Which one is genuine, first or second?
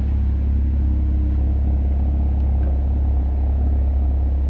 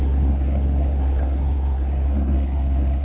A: first